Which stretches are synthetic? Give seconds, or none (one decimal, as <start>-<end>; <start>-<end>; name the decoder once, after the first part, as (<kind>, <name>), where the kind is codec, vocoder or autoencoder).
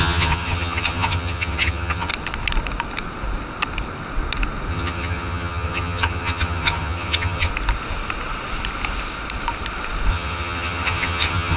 0.0-2.1 (vocoder, HiFi-GAN); 4.7-7.5; 10.1-11.6